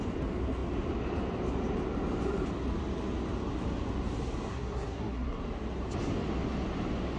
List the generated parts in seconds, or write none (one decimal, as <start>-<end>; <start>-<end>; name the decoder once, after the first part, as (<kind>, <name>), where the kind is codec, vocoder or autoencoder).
4.5-5.4 (codec, SNAC)